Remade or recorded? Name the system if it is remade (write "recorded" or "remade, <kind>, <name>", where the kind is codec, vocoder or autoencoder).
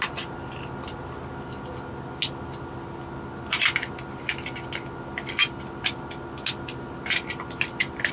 recorded